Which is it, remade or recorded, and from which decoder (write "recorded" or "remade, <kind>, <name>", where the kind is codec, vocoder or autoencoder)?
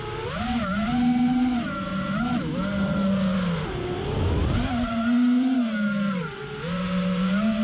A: recorded